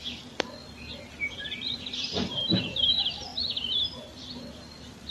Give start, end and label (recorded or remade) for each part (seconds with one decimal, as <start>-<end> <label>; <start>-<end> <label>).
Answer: 0.0-0.6 remade; 0.6-1.3 recorded; 1.3-3.3 remade; 3.3-4.1 recorded; 4.1-5.1 remade